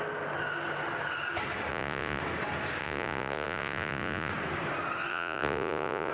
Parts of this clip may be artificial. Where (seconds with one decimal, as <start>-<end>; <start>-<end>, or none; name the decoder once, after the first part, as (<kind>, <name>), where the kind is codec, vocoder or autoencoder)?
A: 1.7-2.2 (vocoder, Vocos); 2.8-4.3; 5.1-6.1